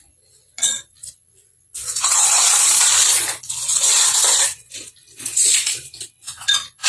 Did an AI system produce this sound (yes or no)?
yes